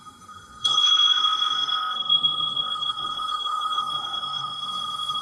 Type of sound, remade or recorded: remade